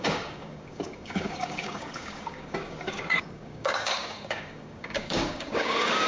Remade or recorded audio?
remade